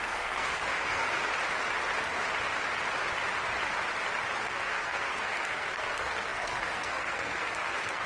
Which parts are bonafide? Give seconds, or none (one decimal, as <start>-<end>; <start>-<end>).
1.2-4.4